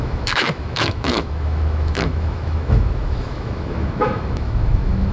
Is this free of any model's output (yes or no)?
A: no